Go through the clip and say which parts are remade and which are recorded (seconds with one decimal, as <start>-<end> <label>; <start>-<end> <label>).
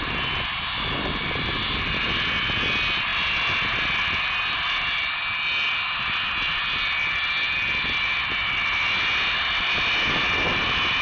0.0-11.0 recorded